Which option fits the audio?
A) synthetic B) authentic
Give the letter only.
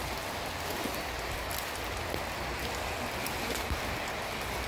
B